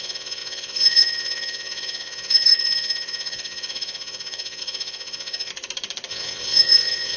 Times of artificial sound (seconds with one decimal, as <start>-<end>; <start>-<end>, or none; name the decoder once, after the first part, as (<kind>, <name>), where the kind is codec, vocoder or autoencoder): 0.0-5.5 (vocoder, WaveNeXt); 6.1-7.2